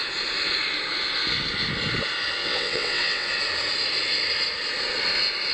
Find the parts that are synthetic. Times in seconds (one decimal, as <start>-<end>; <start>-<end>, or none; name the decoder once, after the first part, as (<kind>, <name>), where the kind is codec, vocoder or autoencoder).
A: 2.4-3.3 (vocoder, WaveNeXt)